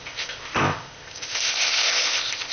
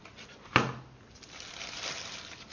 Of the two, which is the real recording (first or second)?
second